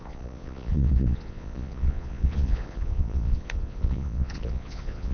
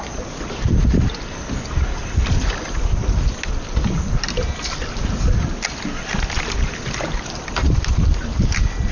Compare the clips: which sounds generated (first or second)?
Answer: first